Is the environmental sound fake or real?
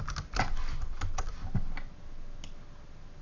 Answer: real